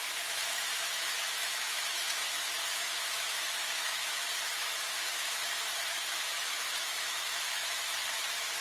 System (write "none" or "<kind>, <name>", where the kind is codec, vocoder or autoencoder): autoencoder, DAC-VAE